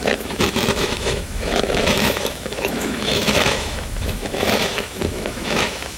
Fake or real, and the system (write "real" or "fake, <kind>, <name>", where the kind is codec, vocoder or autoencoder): fake, autoencoder, DAC-VAE